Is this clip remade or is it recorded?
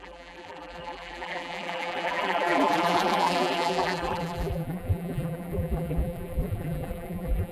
remade